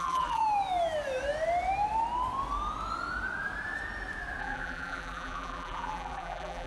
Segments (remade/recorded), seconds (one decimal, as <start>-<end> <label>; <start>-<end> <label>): 0.0-0.4 remade; 0.4-4.4 recorded; 4.4-6.7 remade